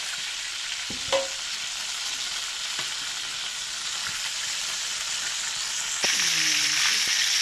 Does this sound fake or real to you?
real